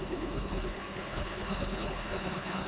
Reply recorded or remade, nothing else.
remade